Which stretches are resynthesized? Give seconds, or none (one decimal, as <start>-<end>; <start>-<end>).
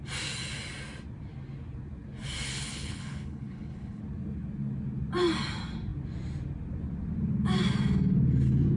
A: 2.5-4.0